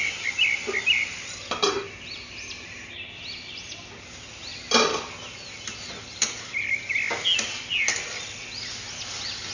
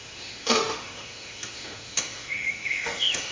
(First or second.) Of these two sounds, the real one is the first